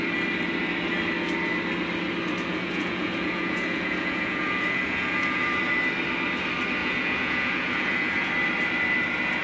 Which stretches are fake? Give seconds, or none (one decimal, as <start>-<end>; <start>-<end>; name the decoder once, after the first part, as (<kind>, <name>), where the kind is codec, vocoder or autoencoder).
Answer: 2.5-5.6 (vocoder, Vocos); 6.8-8.3